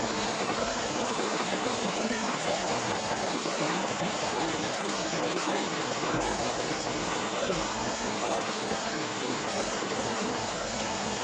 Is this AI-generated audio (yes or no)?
yes